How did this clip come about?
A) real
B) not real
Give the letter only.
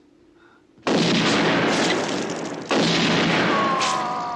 A